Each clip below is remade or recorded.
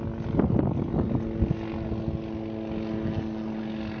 recorded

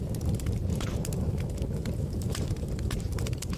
remade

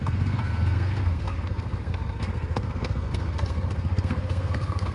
remade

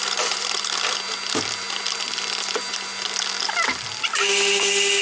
recorded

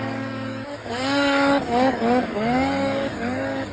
remade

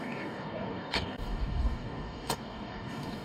remade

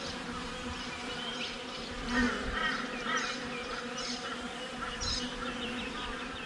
remade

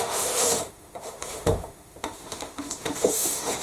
remade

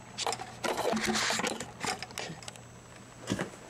recorded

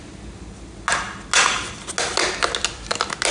recorded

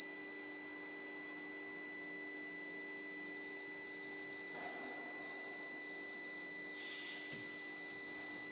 recorded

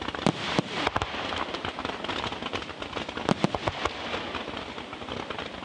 recorded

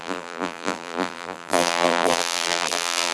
remade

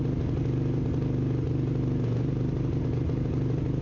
recorded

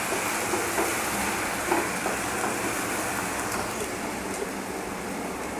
recorded